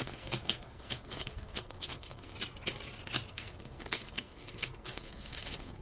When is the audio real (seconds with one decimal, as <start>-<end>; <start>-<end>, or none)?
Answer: 2.3-3.3